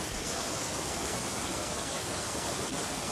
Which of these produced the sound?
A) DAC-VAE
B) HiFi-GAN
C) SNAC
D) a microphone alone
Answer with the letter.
C